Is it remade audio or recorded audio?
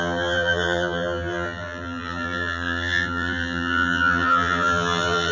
remade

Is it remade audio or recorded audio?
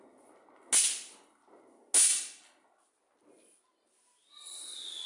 recorded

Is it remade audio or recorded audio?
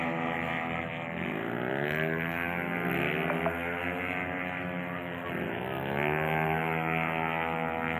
recorded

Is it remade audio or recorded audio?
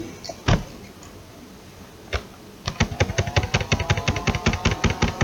recorded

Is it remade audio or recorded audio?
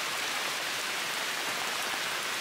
remade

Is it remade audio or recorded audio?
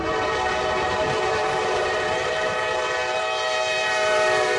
remade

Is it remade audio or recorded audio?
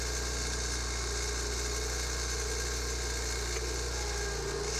recorded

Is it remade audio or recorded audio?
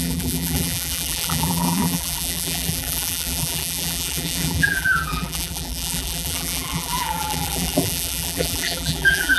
remade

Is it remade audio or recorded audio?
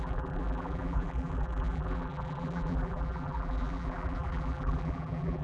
remade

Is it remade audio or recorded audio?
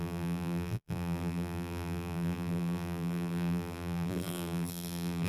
remade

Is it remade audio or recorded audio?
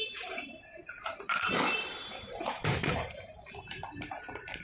remade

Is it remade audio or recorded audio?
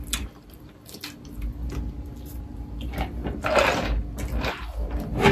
recorded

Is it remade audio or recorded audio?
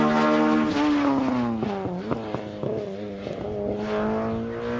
recorded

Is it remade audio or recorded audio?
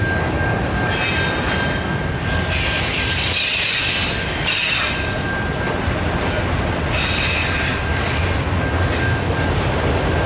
recorded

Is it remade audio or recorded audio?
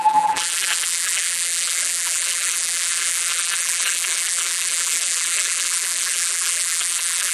remade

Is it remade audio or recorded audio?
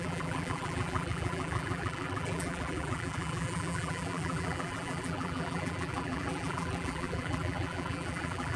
remade